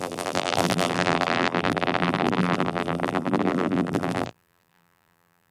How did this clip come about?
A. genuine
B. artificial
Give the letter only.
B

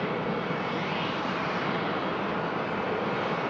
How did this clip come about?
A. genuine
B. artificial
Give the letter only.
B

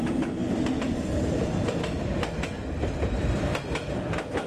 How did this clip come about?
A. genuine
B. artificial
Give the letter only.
A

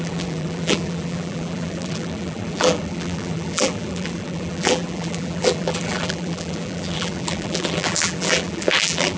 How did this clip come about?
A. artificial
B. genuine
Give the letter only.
A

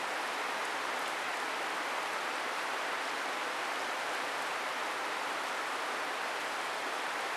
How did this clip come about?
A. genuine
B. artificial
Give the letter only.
B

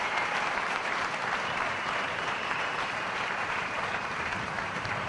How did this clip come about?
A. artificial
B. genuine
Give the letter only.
A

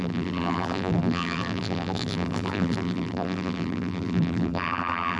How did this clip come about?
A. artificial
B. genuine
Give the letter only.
A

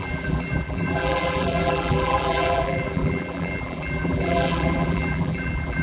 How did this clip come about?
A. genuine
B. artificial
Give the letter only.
B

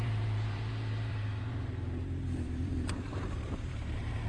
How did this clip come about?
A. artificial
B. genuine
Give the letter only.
A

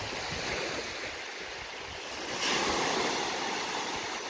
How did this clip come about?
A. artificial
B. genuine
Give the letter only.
B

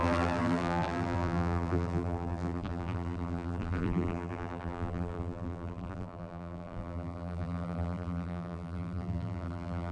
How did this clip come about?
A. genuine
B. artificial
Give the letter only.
B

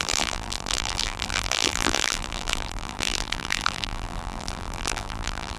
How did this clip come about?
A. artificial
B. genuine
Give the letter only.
A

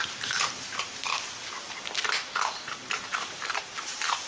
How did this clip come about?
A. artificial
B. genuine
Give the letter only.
B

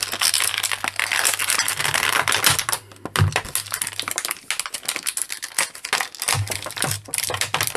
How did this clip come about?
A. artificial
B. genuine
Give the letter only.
B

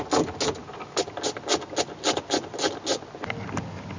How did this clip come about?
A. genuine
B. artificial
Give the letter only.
A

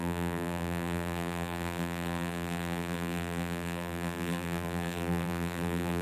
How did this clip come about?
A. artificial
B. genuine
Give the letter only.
A